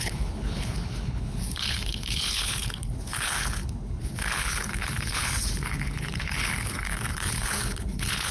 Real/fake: fake